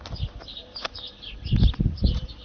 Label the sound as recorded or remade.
recorded